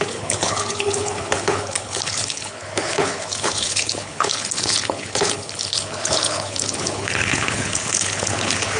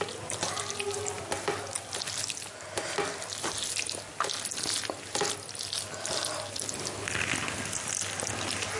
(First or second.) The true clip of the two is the second